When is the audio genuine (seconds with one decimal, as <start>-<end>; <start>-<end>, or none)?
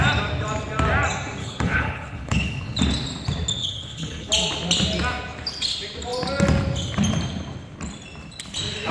0.0-1.4; 2.8-3.6; 4.3-8.9